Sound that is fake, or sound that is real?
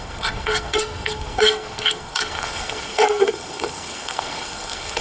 fake